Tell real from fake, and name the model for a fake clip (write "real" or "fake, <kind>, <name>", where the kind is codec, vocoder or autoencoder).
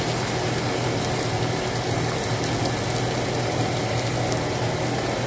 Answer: real